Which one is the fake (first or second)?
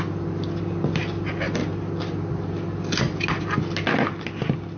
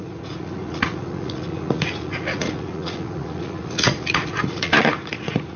second